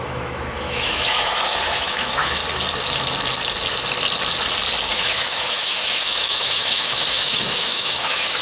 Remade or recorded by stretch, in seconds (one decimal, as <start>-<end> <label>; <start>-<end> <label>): 0.0-2.4 remade; 2.4-4.9 recorded; 4.9-8.4 remade